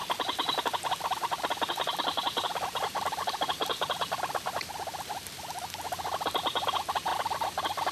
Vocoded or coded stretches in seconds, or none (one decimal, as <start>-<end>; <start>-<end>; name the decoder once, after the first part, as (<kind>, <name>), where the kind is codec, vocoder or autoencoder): 0.0-7.9 (vocoder, BigVGAN v2)